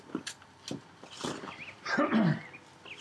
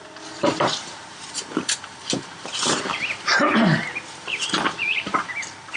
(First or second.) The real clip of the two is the first